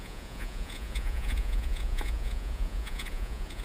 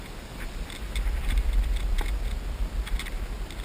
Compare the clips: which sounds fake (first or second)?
first